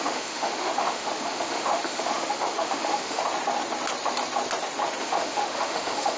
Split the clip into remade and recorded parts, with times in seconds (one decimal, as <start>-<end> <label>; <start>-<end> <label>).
0.0-3.2 remade; 3.2-5.0 recorded; 5.0-6.2 remade